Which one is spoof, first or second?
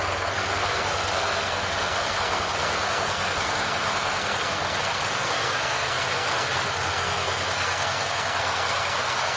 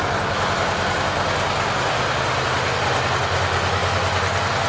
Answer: first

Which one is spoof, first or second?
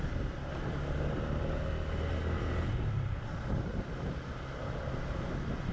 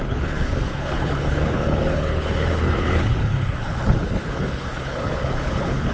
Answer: second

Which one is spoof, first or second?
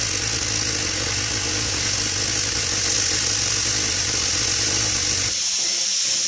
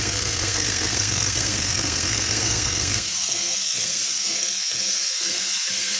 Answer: second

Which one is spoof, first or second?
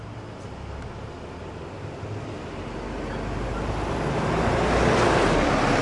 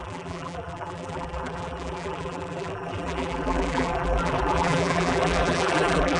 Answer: second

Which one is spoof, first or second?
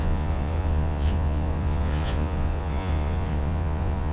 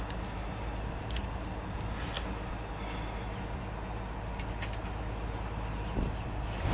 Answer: first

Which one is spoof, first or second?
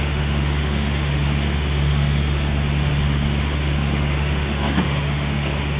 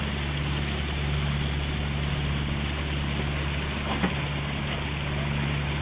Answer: first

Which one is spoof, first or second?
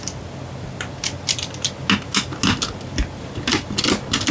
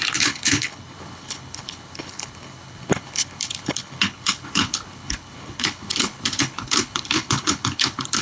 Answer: second